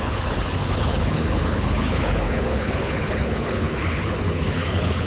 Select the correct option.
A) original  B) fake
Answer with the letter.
B